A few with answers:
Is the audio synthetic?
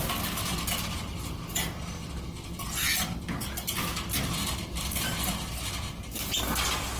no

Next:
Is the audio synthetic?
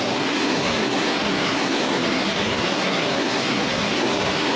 yes